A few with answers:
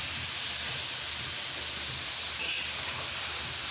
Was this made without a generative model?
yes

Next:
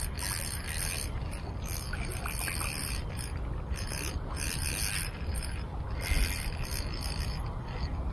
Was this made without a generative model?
yes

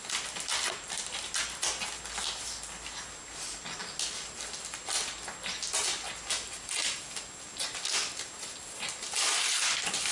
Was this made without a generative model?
yes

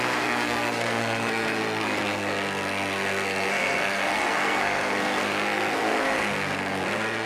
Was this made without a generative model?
no